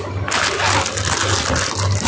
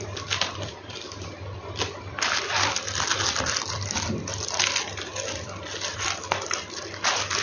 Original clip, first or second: first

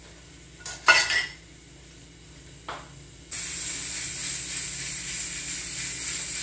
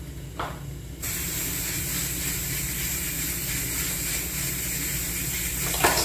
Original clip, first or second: first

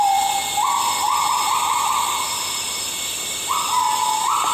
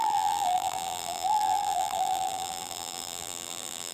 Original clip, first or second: first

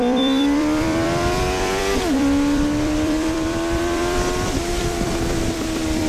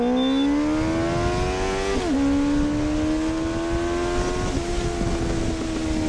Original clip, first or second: second